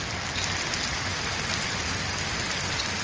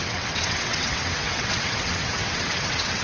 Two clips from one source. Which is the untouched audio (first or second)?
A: first